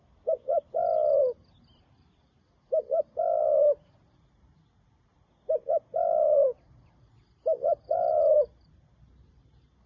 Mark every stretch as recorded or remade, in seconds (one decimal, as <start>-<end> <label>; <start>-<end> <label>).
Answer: 0.0-9.9 recorded